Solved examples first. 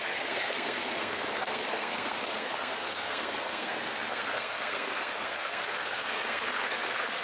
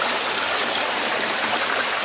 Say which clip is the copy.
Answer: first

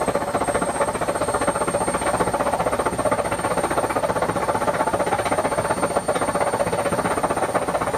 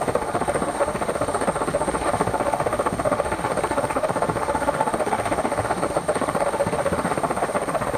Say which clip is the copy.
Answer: second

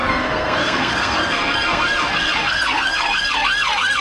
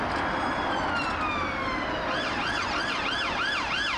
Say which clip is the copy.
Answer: first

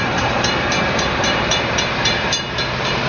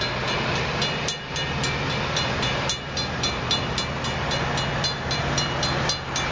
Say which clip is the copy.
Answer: first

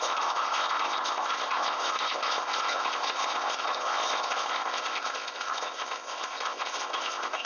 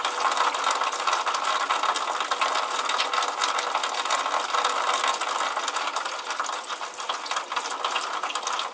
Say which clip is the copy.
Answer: first